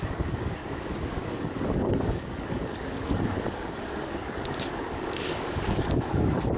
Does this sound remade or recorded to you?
remade